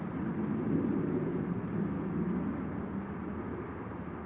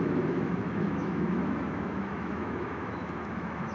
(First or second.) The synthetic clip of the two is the second